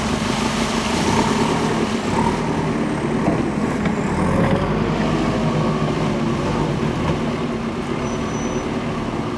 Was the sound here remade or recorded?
recorded